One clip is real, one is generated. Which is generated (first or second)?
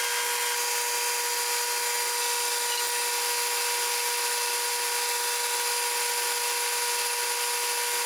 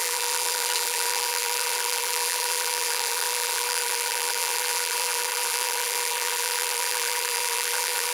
second